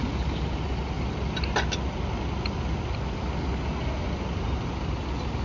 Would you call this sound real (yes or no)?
yes